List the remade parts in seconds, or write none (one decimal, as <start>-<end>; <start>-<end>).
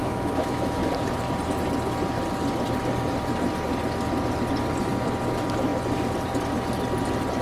0.0-0.9